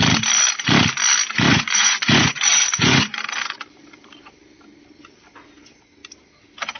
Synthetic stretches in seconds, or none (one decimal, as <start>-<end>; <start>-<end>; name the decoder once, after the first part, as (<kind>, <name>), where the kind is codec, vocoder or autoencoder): 1.5-3.2 (vocoder, Vocos)